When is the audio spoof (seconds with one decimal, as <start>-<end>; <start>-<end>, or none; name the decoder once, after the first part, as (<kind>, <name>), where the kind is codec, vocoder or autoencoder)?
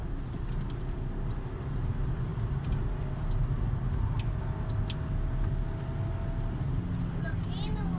1.6-2.3 (vocoder, BigVGAN v2); 7.1-8.0